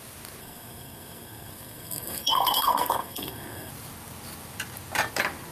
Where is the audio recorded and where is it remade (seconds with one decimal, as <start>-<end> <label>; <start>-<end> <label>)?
0.0-0.4 recorded; 0.4-3.7 remade; 3.7-5.5 recorded